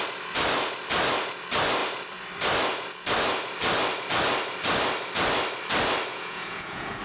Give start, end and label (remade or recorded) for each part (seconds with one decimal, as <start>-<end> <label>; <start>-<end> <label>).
0.0-6.1 recorded; 6.1-7.0 remade